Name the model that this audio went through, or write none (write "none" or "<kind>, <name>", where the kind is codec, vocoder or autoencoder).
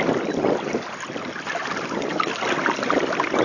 none